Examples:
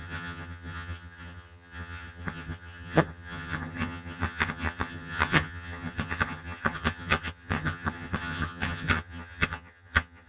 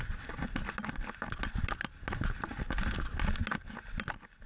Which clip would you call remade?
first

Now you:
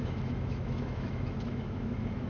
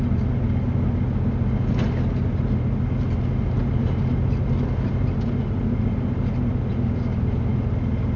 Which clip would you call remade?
first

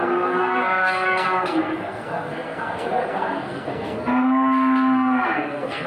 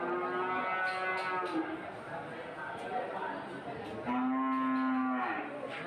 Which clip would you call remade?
first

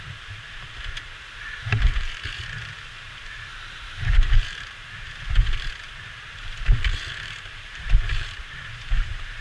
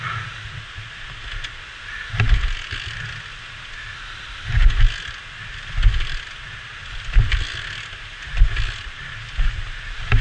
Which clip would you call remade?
first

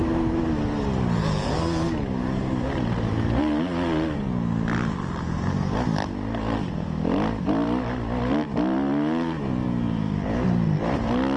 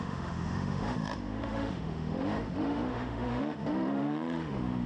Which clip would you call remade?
second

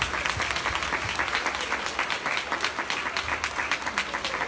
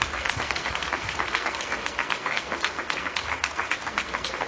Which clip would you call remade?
second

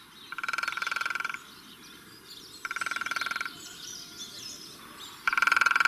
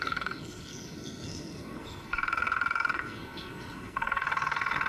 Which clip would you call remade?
second